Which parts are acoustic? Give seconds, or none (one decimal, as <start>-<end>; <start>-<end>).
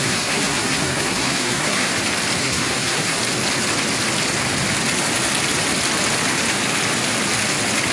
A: 1.9-2.4; 3.2-7.9